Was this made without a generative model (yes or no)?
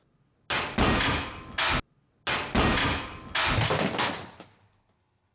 yes